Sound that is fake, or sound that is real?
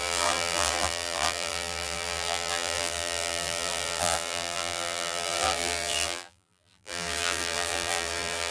fake